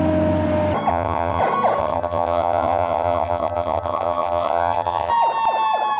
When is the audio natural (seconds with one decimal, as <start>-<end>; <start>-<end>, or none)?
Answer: 0.0-0.9; 1.4-1.8; 5.1-6.0